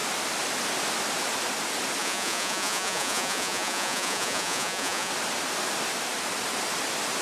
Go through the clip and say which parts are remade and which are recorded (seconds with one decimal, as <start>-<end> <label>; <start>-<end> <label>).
0.0-2.0 recorded; 2.0-5.1 remade; 5.1-7.2 recorded